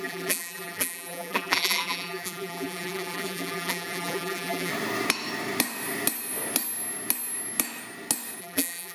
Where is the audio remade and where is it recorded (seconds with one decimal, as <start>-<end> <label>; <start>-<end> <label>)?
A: 0.0-4.7 remade; 4.7-8.4 recorded; 8.4-8.9 remade